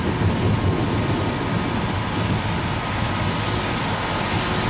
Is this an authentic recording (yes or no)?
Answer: yes